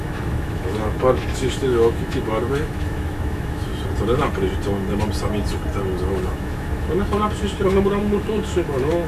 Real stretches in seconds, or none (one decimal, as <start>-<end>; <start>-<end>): 3.7-6.0